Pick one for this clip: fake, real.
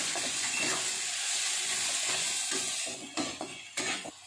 fake